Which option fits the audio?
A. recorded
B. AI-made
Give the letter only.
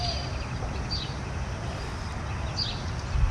A